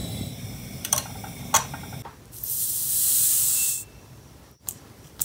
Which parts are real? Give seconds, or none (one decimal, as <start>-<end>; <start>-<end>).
1.4-2.6